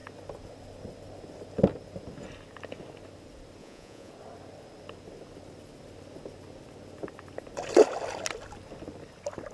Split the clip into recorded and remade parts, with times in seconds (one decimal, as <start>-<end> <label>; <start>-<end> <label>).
0.0-3.6 recorded; 3.6-4.1 remade; 4.1-9.5 recorded